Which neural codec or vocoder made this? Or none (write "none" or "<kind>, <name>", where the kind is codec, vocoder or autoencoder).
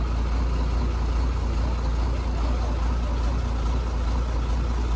none